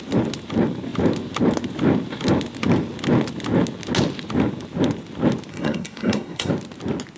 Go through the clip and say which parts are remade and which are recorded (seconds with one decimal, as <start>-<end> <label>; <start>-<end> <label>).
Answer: 0.0-5.5 recorded; 5.5-6.5 remade; 6.5-7.2 recorded